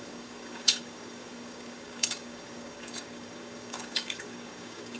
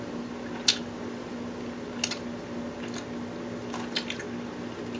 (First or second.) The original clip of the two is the second